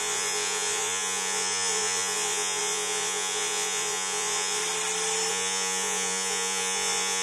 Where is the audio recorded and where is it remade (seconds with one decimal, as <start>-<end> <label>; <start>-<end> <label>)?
0.0-4.6 remade; 4.6-5.3 recorded; 5.3-7.2 remade